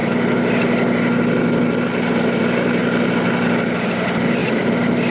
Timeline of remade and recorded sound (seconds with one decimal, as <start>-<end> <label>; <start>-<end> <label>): 0.0-5.1 recorded